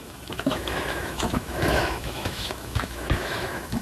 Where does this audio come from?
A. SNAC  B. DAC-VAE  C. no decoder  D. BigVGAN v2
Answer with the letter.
B